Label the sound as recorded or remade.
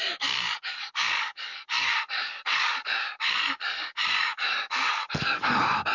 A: remade